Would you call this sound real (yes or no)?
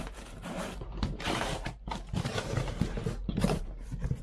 no